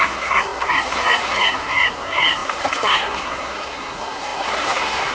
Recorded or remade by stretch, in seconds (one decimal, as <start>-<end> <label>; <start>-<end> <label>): 0.0-5.1 remade